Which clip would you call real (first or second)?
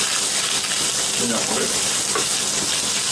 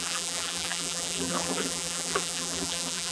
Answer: first